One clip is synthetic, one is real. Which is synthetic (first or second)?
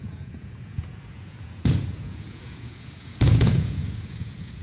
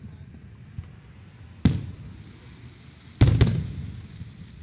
first